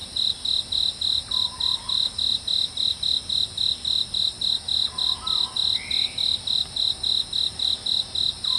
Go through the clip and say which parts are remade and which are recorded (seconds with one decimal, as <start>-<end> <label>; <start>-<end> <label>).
0.0-8.6 recorded